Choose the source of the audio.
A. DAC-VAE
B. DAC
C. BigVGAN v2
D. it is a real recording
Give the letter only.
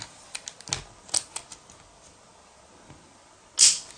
D